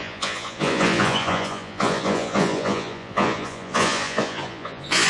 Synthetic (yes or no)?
yes